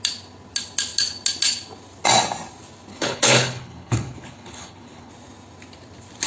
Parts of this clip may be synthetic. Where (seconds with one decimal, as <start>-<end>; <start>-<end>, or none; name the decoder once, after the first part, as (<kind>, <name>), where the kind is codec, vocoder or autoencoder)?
2.9-5.1 (codec, HILCodec)